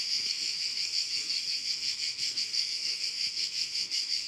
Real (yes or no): no